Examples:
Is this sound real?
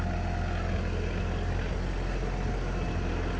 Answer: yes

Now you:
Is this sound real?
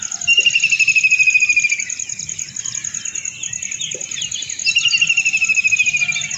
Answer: yes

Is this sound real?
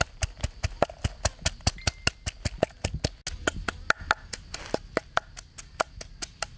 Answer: yes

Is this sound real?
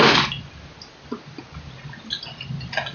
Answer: yes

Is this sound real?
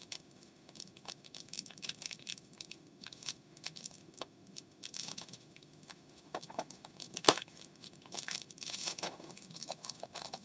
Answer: no